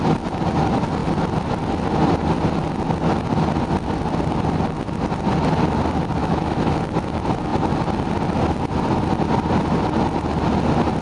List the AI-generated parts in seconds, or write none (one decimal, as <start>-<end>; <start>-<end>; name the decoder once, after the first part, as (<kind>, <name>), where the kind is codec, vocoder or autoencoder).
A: 6.2-6.8 (autoencoder, DAC-VAE)

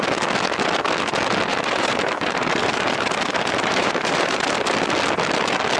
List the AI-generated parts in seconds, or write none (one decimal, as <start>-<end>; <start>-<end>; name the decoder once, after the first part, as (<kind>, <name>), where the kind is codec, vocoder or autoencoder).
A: 1.5-4.6 (vocoder, BigVGAN v2)

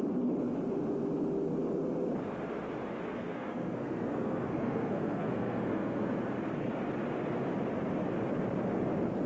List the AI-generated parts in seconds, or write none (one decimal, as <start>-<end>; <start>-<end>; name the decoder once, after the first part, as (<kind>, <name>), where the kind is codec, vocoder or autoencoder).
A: 2.9-6.1 (codec, SNAC)

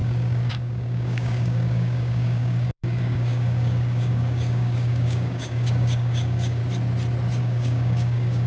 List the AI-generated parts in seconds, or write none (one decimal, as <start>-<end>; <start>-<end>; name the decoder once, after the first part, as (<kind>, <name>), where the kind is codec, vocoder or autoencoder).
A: 0.0-6.6 (codec, DAC); 7.4-8.5

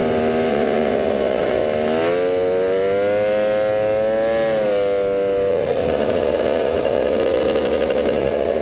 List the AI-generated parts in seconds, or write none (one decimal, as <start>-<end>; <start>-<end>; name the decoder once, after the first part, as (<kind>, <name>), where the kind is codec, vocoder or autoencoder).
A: 0.5-1.6 (vocoder, Vocos); 5.5-8.6

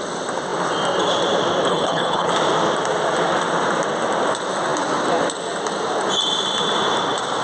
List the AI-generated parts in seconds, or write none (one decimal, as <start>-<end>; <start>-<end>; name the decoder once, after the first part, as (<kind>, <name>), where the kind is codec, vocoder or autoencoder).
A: 1.7-2.3 (codec, HILCodec)